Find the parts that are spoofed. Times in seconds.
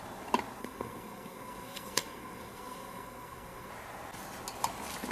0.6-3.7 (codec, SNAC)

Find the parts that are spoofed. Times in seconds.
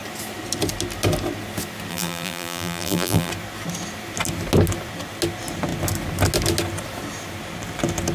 1.9-3.3 (vocoder, BigVGAN v2)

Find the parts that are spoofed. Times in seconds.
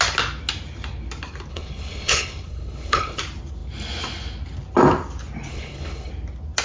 1.5-3.2 (codec, HILCodec); 5.5-6.1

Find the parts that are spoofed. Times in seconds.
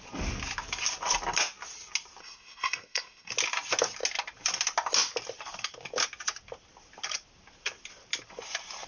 2.2-3.3 (codec, SNAC)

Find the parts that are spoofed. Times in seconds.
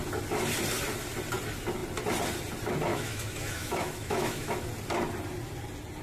2.9-4.5 (autoencoder, DAC-VAE)